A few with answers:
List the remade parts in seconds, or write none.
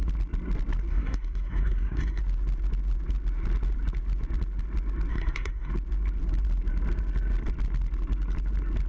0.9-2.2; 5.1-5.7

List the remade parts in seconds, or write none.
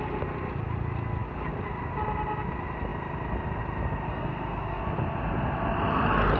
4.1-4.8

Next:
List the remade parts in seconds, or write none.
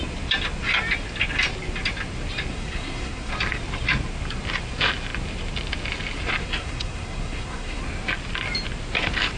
2.5-3.3; 6.4-7.8